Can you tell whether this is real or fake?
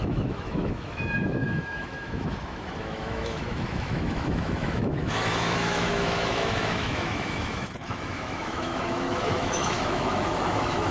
fake